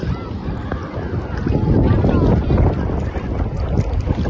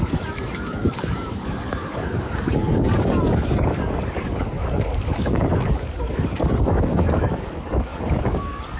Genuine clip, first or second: first